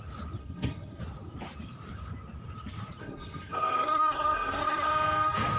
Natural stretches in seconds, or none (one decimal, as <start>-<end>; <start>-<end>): 0.0-0.4; 1.0-3.0; 4.9-5.6